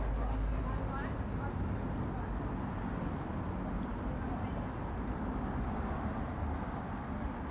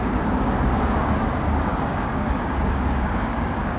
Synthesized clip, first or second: second